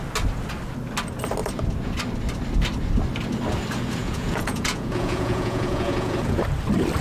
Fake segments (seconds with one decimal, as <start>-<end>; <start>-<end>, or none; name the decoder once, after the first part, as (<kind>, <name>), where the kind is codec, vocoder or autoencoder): 4.0-6.4 (vocoder, Vocos)